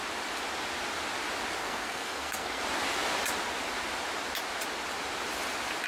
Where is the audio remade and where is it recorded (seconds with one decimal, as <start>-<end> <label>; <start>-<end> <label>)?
0.0-1.6 recorded; 1.6-2.6 remade; 2.6-5.9 recorded